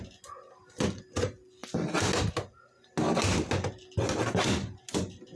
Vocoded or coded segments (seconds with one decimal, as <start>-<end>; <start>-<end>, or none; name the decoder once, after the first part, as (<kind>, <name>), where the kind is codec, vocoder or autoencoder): none